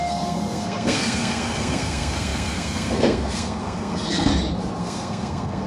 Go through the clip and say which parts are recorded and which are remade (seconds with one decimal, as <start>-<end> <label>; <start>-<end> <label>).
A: 0.0-4.3 remade; 4.3-4.8 recorded; 4.8-5.7 remade